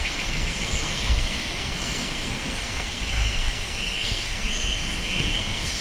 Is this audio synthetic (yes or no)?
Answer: yes